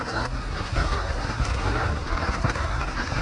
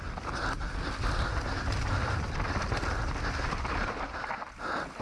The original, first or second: second